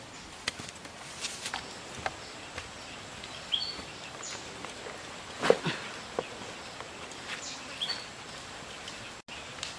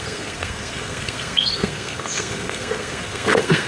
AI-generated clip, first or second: second